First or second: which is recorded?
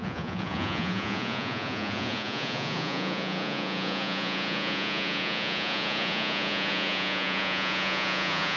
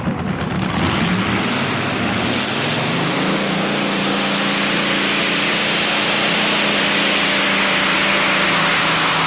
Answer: second